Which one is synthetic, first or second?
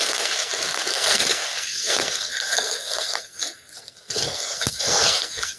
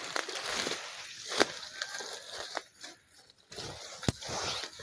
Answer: first